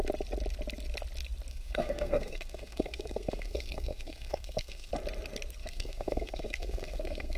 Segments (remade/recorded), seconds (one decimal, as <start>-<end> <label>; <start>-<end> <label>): 0.0-1.5 recorded; 1.5-4.9 remade; 4.9-5.6 recorded; 5.6-7.4 remade